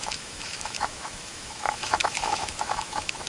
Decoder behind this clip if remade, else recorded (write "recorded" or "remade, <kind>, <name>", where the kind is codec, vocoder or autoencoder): remade, autoencoder, DAC-VAE